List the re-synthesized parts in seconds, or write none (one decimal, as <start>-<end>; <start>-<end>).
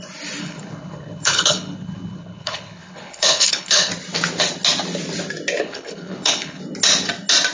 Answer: 0.4-3.9; 5.6-6.6